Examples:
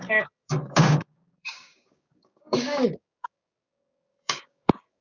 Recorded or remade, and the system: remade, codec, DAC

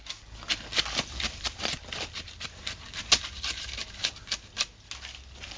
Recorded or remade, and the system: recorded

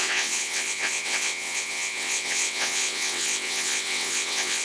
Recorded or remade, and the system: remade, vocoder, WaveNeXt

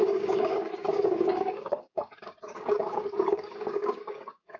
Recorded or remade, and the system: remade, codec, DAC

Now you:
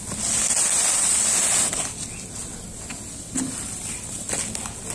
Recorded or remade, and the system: recorded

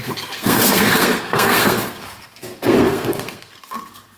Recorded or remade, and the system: remade, codec, SNAC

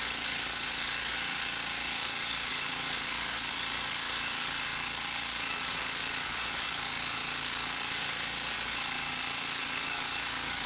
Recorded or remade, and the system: remade, codec, DAC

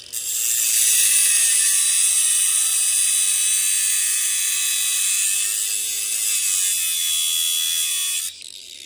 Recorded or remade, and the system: recorded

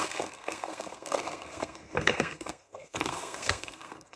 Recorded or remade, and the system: remade, codec, SNAC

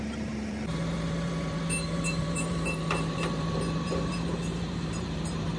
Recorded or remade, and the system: remade, vocoder, BigVGAN v2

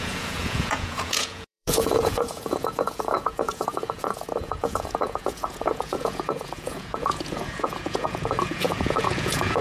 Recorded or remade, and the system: remade, vocoder, Vocos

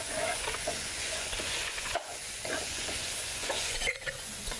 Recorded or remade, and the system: remade, vocoder, Vocos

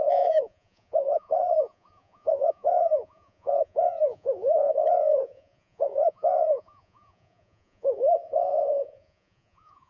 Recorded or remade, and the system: remade, vocoder, Vocos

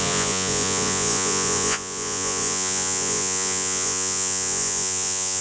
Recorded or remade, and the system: remade, vocoder, Vocos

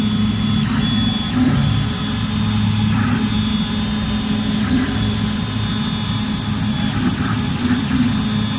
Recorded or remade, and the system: recorded